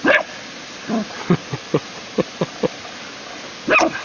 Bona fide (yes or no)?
yes